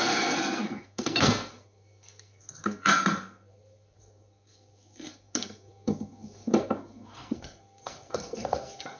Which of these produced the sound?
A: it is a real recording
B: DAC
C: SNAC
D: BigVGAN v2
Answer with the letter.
C